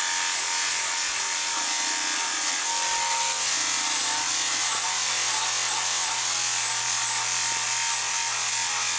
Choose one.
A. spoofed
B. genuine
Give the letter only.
B